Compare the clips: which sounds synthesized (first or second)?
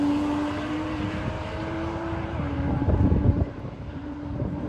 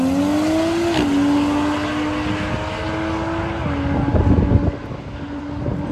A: first